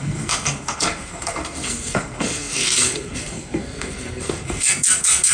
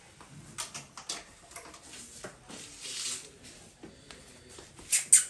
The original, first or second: second